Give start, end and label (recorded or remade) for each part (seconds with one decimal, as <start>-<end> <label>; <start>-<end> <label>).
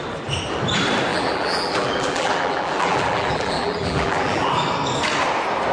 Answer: 0.0-1.1 recorded; 1.1-4.5 remade; 4.5-5.7 recorded